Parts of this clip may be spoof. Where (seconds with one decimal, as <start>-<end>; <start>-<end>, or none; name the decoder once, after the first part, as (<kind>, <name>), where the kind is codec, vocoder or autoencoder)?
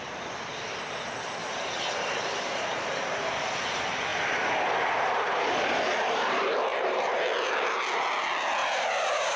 1.4-3.3 (vocoder, BigVGAN v2); 6.7-7.2; 8.6-9.4